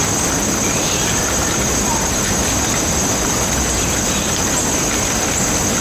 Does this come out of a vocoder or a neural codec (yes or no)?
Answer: no